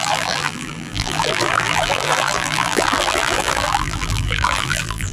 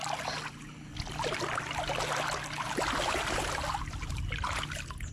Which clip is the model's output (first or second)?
first